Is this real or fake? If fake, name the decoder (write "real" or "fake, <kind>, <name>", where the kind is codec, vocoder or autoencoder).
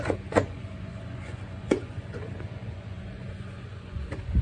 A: fake, vocoder, Vocos